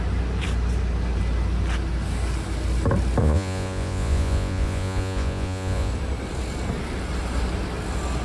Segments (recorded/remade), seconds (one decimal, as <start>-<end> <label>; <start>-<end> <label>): 0.0-3.2 recorded; 3.2-5.9 remade; 5.9-8.2 recorded